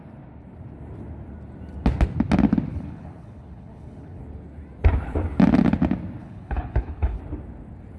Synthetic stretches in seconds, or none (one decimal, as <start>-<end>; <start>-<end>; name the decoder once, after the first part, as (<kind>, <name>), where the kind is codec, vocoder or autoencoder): 2.7-4.2 (codec, HILCodec); 6.2-7.2